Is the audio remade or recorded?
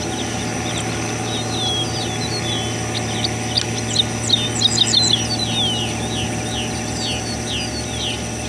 recorded